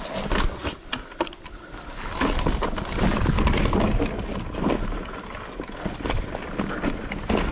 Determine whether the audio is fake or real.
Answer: real